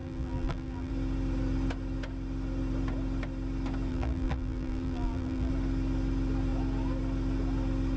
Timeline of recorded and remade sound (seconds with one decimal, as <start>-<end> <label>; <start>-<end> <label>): 0.0-0.9 remade; 0.9-3.9 recorded; 3.9-5.5 remade; 5.5-8.0 recorded

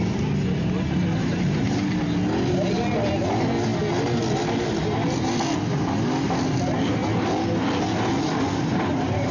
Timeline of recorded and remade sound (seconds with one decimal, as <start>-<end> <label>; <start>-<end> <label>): 0.0-1.2 recorded; 1.2-2.0 remade; 2.0-8.7 recorded; 8.7-9.3 remade

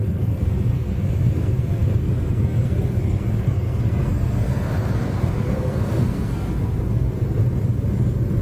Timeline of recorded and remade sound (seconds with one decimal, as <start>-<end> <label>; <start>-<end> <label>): 0.0-7.4 remade; 7.4-8.4 recorded

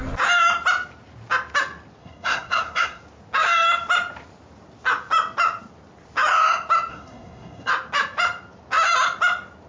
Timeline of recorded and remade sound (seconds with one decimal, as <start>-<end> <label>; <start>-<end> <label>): 0.0-2.0 recorded; 2.0-3.0 remade; 3.0-6.9 recorded; 6.9-7.7 remade; 7.7-9.7 recorded

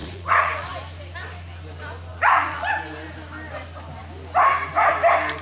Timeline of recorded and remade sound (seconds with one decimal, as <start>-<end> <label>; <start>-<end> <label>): 0.0-0.7 remade; 0.7-2.1 recorded; 2.1-2.7 remade; 2.7-5.4 recorded